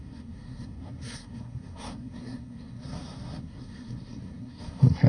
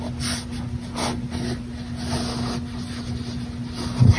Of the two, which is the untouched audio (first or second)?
second